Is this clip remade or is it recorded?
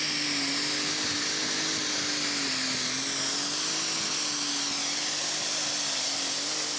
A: recorded